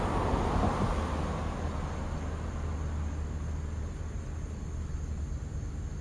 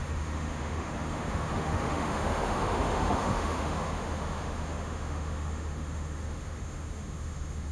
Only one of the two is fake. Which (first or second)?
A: second